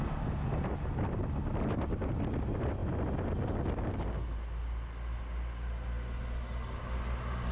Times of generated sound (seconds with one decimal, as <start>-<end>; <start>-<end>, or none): none

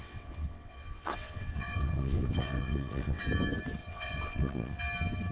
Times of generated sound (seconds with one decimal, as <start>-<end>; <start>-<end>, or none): 0.0-3.2; 3.8-4.8

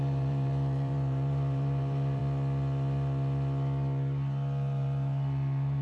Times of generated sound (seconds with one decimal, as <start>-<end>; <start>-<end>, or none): 0.0-2.2